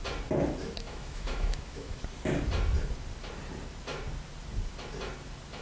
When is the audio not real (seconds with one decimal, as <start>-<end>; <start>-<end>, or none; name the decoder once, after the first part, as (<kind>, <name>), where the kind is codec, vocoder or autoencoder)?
0.6-2.0 (autoencoder, DAC-VAE)